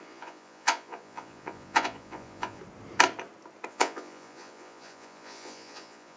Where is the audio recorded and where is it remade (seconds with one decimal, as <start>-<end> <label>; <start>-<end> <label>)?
0.0-2.6 remade; 2.6-3.7 recorded; 3.7-6.2 remade